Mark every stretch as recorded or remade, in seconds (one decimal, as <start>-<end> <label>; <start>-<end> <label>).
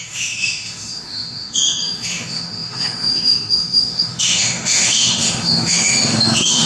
0.0-6.7 remade